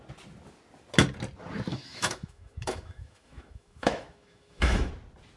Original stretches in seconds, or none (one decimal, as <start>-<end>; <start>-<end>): 0.0-1.7; 4.9-5.4